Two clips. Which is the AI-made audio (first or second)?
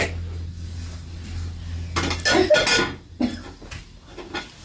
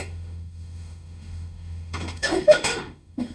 second